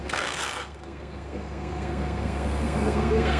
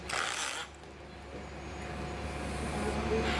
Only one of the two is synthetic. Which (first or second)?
first